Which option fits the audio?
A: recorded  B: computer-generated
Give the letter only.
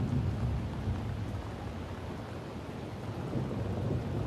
A